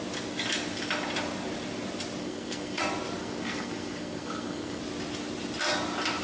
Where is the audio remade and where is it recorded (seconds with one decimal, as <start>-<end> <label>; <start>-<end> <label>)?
0.0-2.2 recorded; 2.2-2.8 remade; 2.8-3.2 recorded; 3.2-4.8 remade; 4.8-6.2 recorded